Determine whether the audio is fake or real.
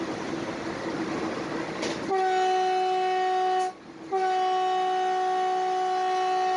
real